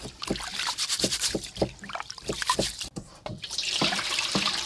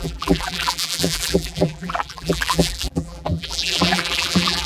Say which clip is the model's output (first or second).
second